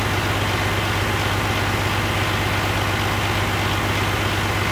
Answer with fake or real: real